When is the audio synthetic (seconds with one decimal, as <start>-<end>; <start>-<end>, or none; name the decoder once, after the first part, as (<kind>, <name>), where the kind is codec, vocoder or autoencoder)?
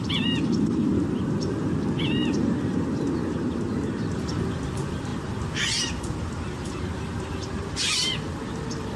0.0-0.9 (vocoder, BigVGAN v2); 1.4-9.0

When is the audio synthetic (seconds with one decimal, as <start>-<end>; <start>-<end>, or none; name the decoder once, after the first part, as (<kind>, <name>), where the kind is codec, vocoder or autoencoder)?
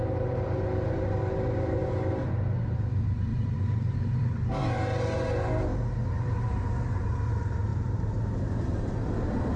0.0-5.7 (vocoder, BigVGAN v2); 6.2-9.6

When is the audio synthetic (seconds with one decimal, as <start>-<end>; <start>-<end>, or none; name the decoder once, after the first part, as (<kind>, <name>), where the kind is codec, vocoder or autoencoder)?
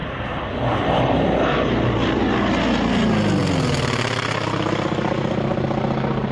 0.0-1.0 (vocoder, BigVGAN v2)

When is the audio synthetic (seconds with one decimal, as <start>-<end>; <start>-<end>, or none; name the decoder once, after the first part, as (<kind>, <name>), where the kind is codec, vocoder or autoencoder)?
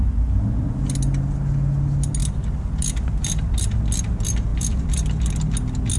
2.2-3.4 (vocoder, BigVGAN v2); 4.5-5.3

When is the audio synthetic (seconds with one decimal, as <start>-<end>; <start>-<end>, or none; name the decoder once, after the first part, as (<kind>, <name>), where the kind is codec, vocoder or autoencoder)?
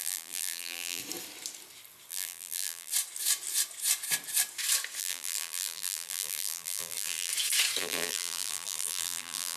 0.0-1.0 (vocoder, BigVGAN v2); 2.1-2.9; 5.0-7.3; 7.8-9.6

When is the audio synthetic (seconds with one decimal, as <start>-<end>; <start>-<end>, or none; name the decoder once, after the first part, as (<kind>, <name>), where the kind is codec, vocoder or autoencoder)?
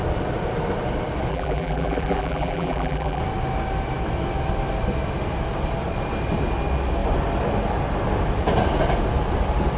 1.3-3.2 (vocoder, BigVGAN v2)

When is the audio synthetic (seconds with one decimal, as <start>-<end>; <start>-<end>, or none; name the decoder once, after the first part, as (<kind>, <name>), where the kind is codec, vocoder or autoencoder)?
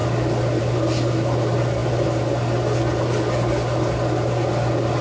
none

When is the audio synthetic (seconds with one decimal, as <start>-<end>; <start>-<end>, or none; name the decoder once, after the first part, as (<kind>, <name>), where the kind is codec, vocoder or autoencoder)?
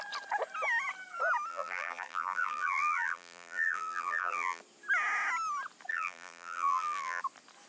1.5-4.6 (vocoder, BigVGAN v2); 5.9-7.2